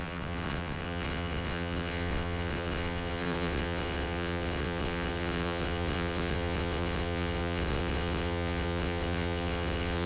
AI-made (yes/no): yes